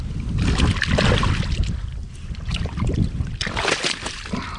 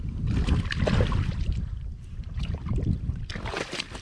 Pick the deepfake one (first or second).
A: second